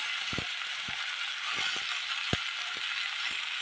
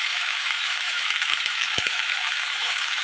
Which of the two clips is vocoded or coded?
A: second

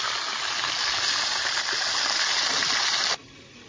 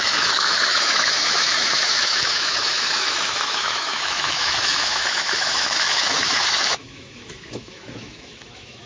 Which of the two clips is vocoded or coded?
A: second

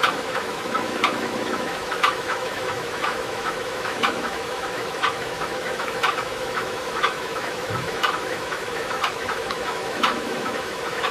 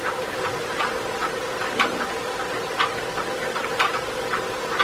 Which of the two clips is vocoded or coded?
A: first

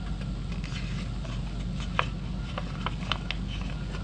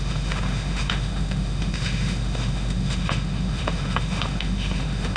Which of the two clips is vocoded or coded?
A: second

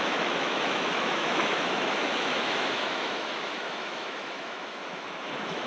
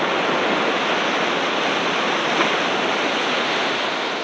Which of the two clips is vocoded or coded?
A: first